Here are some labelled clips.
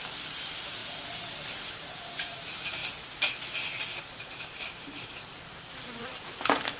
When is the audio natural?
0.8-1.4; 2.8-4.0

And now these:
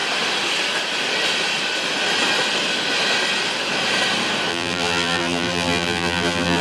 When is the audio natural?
0.0-4.5